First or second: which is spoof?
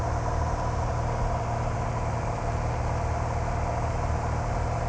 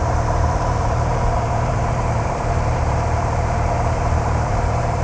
second